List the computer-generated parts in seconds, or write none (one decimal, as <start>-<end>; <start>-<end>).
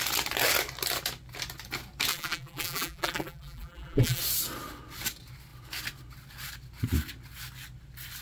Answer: 2.1-4.2